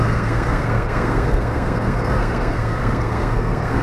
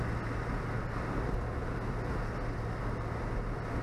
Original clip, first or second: second